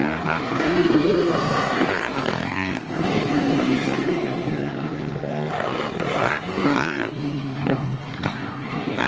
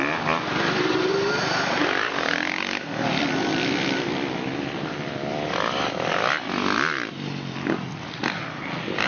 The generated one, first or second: first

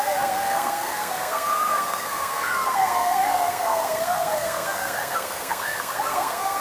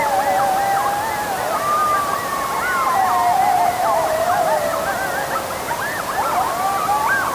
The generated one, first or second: first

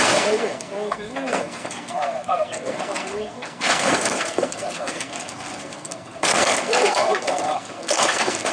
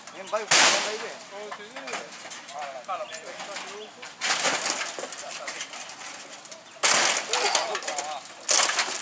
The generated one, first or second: first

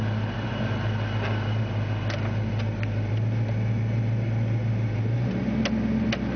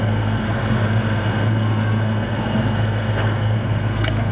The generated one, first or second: second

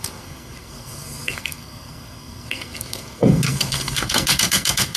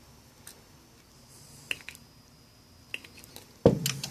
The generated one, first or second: first